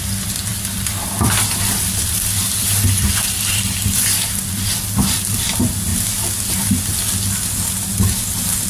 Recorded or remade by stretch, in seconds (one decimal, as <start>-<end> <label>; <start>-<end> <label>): 0.0-0.5 recorded; 0.5-4.5 remade; 4.5-8.7 recorded

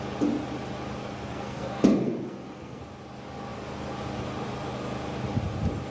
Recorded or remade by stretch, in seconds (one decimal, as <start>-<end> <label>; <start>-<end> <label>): 0.0-1.0 recorded; 1.0-2.8 remade; 2.8-5.9 recorded